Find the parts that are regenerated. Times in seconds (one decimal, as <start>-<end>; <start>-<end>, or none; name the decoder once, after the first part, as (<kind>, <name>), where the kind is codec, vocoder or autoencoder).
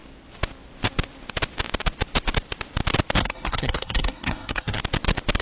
3.2-4.8 (codec, SNAC)